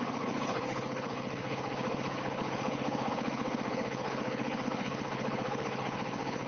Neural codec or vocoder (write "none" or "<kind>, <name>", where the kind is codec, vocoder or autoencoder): codec, HILCodec